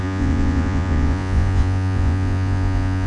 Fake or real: fake